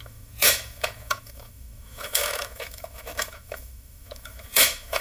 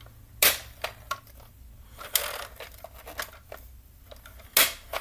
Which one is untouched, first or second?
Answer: second